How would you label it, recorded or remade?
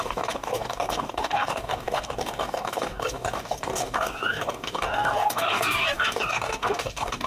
remade